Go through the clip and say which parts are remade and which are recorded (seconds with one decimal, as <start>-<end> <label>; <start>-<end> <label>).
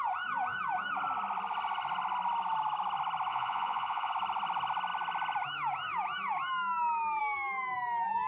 0.0-3.3 recorded; 3.3-4.1 remade; 4.1-8.3 recorded